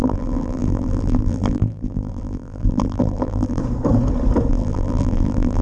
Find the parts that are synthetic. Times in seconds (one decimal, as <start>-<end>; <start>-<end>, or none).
0.0-3.6; 4.5-5.6